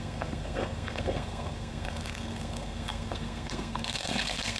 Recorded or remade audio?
remade